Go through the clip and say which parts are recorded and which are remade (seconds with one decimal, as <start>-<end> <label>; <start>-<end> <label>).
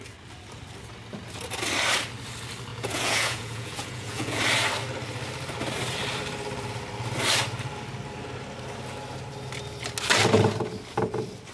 0.0-2.7 recorded; 2.7-4.4 remade; 4.4-11.5 recorded